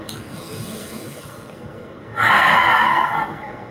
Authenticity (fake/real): fake